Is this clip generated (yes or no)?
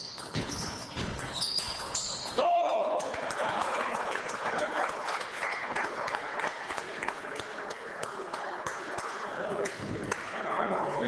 yes